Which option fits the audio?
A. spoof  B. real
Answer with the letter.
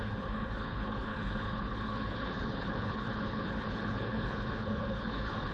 A